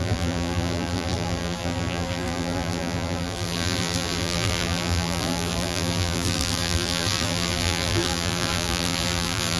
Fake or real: fake